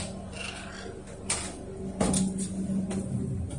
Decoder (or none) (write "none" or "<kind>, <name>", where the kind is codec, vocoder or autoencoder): none